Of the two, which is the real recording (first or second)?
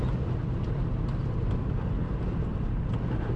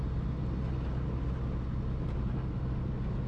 second